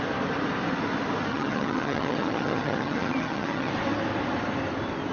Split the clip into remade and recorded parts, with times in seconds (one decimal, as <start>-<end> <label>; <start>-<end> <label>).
0.0-1.3 recorded; 1.3-3.7 remade; 3.7-5.1 recorded